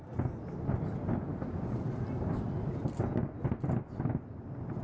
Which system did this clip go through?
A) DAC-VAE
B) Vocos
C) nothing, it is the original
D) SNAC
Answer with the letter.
C